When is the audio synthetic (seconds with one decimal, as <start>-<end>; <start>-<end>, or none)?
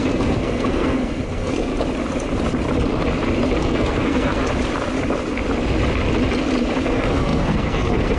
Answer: 0.0-1.7; 3.6-4.4; 6.8-8.2